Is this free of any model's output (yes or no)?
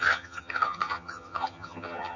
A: no